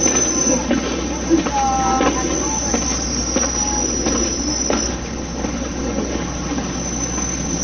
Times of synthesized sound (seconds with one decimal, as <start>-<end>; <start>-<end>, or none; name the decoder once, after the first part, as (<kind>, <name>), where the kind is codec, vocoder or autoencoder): none